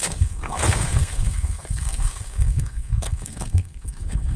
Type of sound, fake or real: fake